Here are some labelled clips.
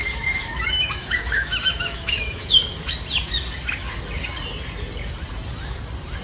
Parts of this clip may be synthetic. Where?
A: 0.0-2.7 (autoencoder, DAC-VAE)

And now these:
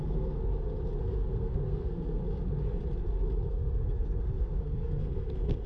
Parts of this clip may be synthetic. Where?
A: 0.0-0.4 (codec, SNAC); 1.0-2.2; 3.5-5.7

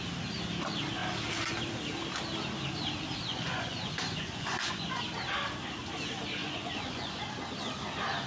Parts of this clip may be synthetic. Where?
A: 3.3-5.0 (vocoder, Vocos); 6.4-7.2

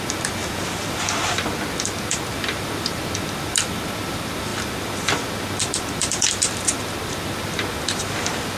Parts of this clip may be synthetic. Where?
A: 0.0-8.6 (vocoder, BigVGAN v2)

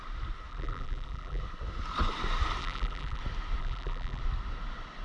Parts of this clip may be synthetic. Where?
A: 0.5-1.4 (vocoder, BigVGAN v2); 2.6-3.2; 3.6-4.2

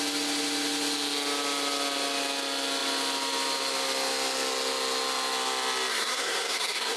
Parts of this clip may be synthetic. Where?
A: 5.9-7.0 (codec, SNAC)

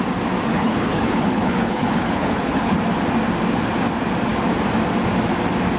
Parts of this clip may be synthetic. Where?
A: 0.5-2.8 (codec, HILCodec)

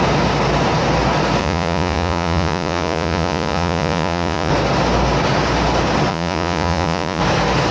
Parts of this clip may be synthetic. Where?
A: 1.4-4.5 (vocoder, Vocos); 6.1-7.2